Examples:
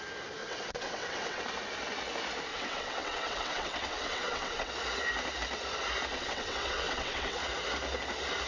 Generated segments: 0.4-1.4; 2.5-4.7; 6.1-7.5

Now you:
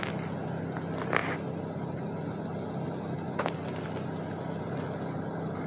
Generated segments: none

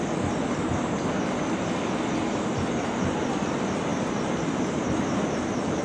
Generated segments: none

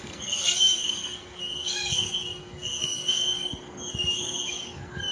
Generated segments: 0.0-5.1